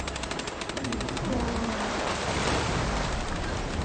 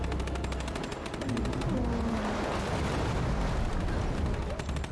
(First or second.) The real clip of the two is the second